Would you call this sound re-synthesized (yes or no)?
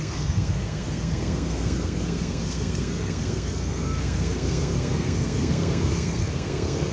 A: yes